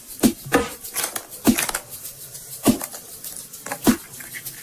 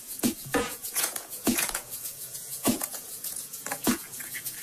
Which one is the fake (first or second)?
second